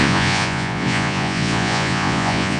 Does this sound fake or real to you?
fake